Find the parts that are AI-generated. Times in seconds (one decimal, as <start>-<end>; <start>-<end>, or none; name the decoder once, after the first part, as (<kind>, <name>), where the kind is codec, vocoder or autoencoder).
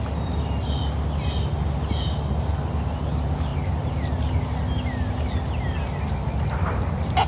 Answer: none